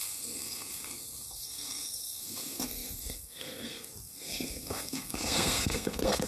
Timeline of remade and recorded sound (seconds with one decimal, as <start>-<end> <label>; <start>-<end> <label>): 0.0-6.3 remade